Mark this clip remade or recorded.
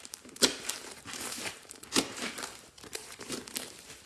remade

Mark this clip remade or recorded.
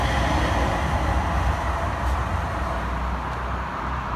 recorded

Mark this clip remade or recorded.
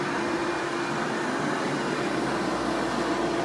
recorded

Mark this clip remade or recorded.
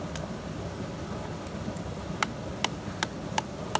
recorded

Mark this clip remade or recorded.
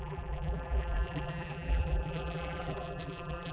remade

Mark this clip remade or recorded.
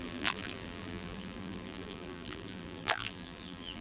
remade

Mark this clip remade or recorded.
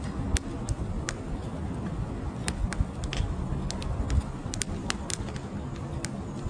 recorded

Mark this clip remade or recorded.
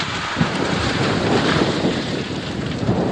remade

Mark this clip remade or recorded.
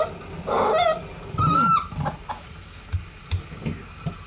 recorded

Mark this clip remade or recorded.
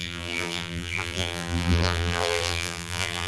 remade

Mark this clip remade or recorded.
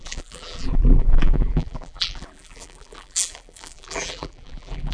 remade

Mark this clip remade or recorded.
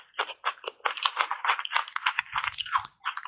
recorded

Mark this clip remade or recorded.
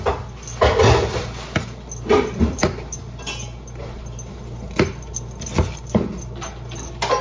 recorded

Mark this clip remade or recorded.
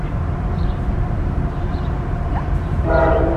remade